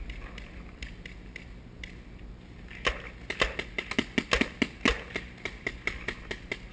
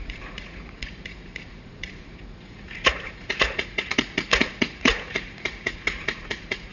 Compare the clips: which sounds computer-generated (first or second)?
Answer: second